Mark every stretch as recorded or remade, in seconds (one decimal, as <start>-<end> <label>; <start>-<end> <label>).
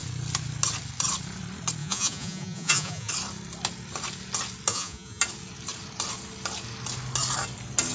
0.0-1.8 recorded; 1.8-3.1 remade; 3.1-4.7 recorded; 4.7-5.2 remade; 5.2-7.9 recorded